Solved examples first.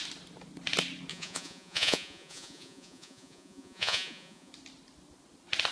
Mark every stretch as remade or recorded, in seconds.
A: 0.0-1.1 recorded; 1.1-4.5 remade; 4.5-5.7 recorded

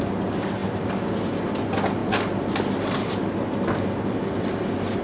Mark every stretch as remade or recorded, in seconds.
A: 0.0-5.0 recorded